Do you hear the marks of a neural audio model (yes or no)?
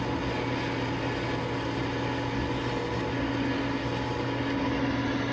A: no